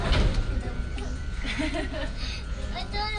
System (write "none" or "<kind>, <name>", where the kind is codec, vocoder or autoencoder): none